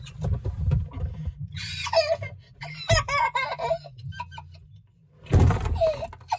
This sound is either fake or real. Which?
real